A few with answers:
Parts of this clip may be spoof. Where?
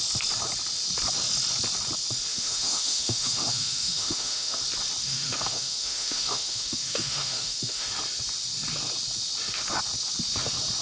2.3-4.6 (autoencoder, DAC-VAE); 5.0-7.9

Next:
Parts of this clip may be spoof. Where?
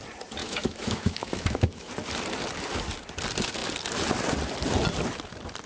0.4-1.9 (autoencoder, DAC-VAE)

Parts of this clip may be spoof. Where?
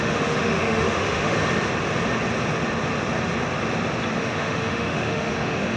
0.0-1.4 (autoencoder, DAC-VAE); 4.2-5.8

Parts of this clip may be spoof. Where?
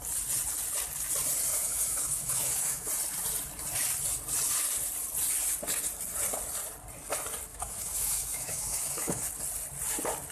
1.5-2.9 (autoencoder, DAC-VAE); 7.5-9.3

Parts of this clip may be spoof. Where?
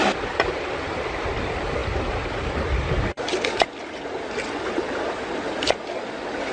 none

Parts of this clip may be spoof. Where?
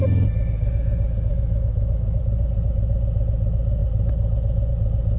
1.3-2.2 (autoencoder, DAC-VAE)